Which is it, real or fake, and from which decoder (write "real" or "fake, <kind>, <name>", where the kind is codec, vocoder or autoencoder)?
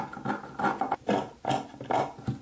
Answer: real